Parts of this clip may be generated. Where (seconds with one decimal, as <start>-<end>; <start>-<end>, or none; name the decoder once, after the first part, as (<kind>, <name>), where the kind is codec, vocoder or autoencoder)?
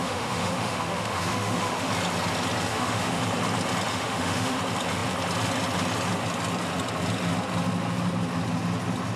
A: 0.0-1.9 (autoencoder, DAC-VAE); 2.7-3.2; 3.9-4.6